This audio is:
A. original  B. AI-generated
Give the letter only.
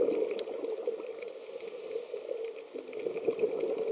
A